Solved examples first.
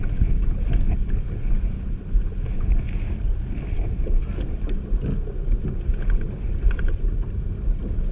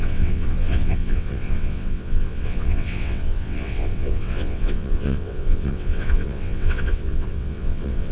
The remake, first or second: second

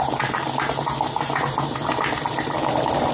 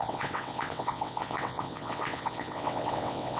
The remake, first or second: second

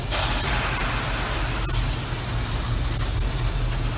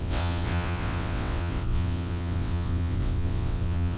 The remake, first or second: second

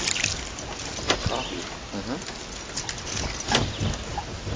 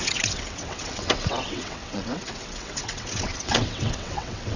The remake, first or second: second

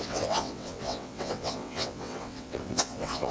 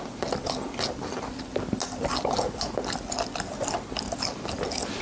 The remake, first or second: first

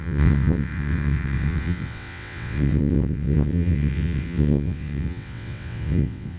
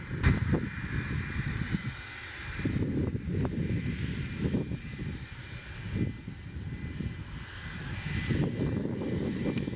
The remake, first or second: first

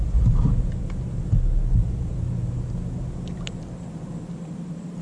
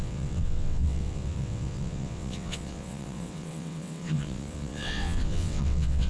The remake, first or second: second